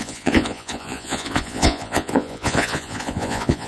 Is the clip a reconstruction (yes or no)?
yes